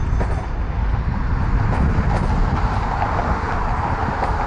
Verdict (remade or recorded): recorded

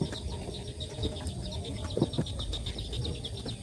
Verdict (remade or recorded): recorded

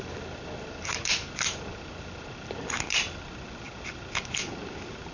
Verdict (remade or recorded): recorded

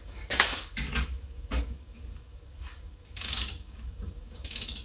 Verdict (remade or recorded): remade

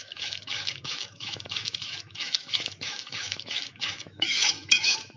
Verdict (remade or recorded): remade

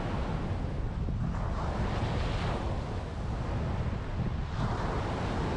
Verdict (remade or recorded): recorded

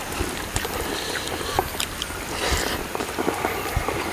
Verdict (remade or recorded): remade